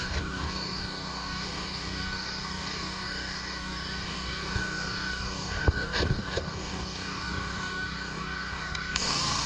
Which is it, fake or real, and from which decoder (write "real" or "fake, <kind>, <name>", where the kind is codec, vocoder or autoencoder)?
fake, codec, DAC